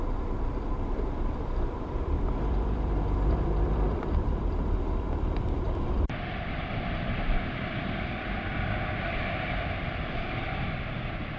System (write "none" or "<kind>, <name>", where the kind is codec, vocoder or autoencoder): vocoder, BigVGAN v2